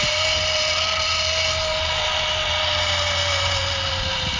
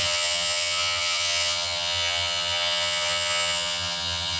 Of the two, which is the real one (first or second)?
first